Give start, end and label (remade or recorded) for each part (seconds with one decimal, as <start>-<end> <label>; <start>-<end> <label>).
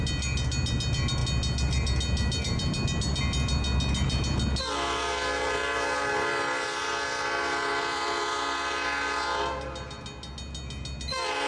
0.0-11.5 recorded